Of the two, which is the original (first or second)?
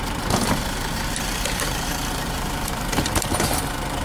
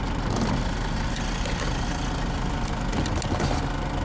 second